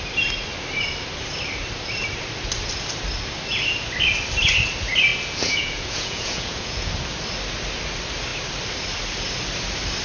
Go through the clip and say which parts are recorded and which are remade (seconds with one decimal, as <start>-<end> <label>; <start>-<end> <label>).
0.0-5.1 recorded; 5.1-6.9 remade; 6.9-10.0 recorded